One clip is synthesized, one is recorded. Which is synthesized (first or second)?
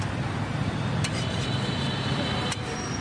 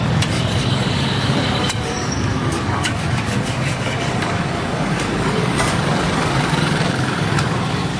second